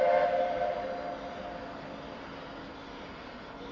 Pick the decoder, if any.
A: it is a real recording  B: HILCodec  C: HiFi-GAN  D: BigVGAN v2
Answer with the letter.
A